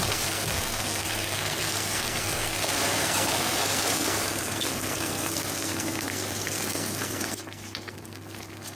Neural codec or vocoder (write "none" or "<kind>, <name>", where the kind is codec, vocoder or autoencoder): codec, SNAC